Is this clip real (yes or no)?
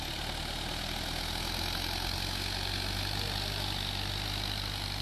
yes